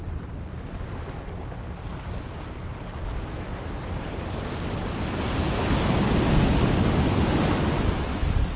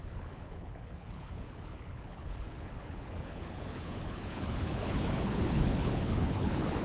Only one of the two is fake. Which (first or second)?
second